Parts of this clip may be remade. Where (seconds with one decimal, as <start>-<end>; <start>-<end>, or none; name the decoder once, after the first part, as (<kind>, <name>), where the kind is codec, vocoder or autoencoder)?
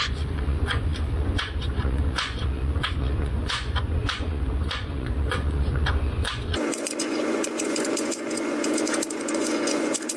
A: 0.0-10.2 (vocoder, Vocos)